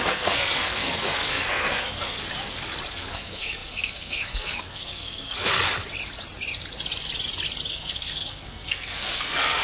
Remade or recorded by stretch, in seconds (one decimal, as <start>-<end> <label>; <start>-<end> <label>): 0.0-2.2 remade; 2.2-2.9 recorded; 2.9-5.5 remade; 5.5-7.7 recorded; 7.7-9.6 remade